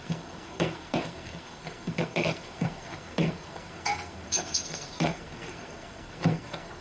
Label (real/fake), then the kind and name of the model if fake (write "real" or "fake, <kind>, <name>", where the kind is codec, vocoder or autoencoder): fake, codec, SNAC